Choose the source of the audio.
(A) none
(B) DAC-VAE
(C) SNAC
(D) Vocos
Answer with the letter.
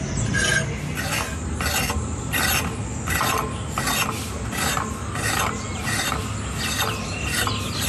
A